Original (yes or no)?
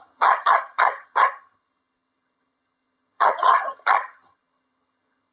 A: no